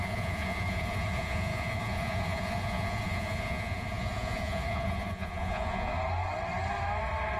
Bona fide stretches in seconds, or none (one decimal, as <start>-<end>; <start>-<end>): 5.9-7.4